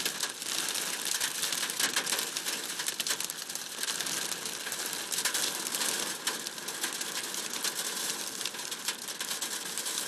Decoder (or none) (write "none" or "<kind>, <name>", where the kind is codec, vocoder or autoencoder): none